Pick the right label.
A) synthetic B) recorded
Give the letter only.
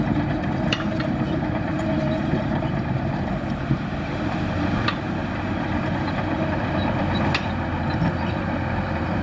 A